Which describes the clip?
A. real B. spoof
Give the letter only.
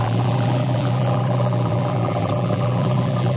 B